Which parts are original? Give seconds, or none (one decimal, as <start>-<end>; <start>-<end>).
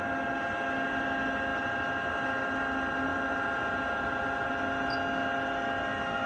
0.0-3.1; 4.5-6.3